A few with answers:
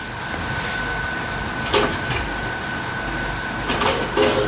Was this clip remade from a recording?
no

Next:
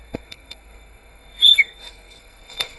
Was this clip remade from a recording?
yes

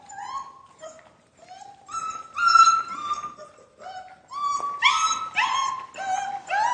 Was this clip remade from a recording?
no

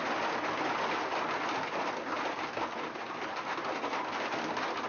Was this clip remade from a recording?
no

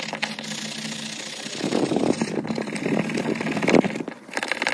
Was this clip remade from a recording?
no